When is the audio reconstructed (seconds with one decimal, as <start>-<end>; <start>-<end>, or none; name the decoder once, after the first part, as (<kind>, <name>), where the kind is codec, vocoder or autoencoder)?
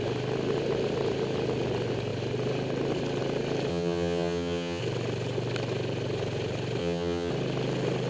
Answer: 3.7-4.8 (vocoder, HiFi-GAN); 6.8-7.3